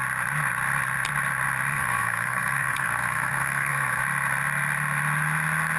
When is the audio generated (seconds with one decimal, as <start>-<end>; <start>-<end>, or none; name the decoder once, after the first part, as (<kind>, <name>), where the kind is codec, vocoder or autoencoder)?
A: 1.7-4.0 (codec, SNAC)